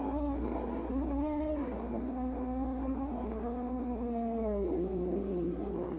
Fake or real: fake